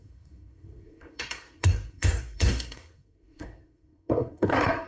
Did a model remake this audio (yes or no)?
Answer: yes